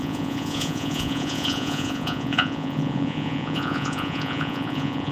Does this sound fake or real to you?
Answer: fake